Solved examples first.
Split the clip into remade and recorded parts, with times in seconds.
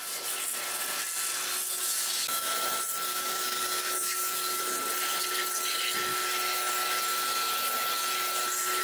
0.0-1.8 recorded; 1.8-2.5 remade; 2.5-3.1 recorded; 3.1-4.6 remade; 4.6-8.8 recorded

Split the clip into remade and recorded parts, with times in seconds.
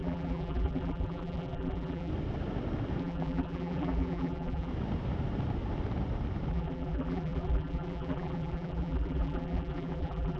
0.0-2.1 remade; 2.1-3.0 recorded; 3.0-4.7 remade; 4.7-6.5 recorded; 6.5-10.4 remade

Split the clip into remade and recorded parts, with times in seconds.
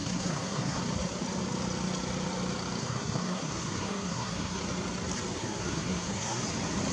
0.0-0.8 remade; 0.8-2.8 recorded; 2.8-4.6 remade; 4.6-5.4 recorded; 5.4-6.4 remade; 6.4-6.9 recorded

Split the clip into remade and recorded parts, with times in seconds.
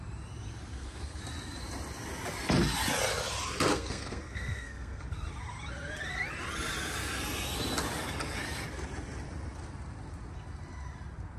0.0-0.7 recorded; 0.7-1.2 remade; 1.2-3.7 recorded; 3.7-5.0 remade; 5.0-11.4 recorded